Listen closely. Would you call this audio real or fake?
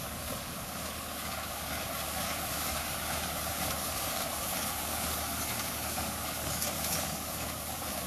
fake